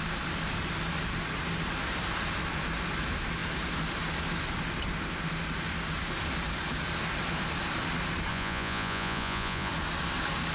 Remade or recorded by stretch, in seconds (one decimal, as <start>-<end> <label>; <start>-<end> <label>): 0.0-8.3 recorded; 8.3-9.7 remade; 9.7-10.5 recorded